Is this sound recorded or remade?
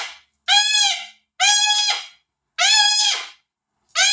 recorded